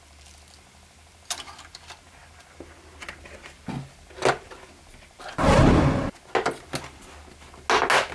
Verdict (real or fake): real